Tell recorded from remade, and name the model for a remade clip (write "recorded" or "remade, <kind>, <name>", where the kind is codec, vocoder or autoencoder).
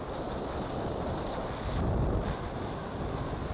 recorded